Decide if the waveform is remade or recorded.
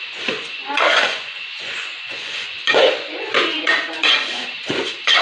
remade